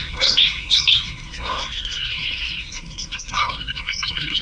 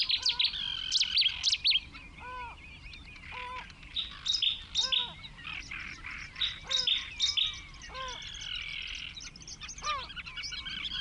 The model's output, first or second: first